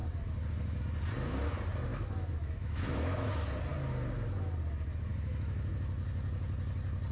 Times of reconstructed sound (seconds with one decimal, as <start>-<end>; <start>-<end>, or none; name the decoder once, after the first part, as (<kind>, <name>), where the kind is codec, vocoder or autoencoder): 1.9-3.3 (autoencoder, DAC-VAE)